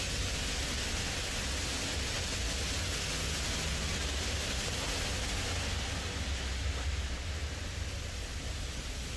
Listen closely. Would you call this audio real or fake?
real